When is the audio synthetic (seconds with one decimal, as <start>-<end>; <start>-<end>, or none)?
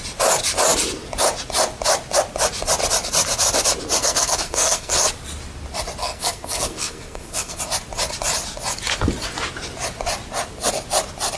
4.0-4.9; 6.0-7.6